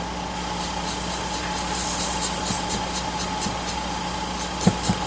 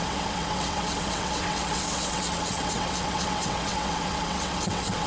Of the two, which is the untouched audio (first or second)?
first